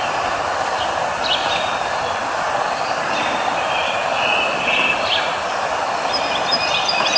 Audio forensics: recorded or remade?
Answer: recorded